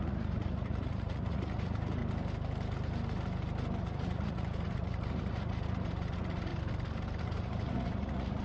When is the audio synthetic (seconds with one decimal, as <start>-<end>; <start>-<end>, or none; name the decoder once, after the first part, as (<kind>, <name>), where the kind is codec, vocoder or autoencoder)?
0.0-2.0 (vocoder, Vocos); 3.8-6.5; 7.2-8.4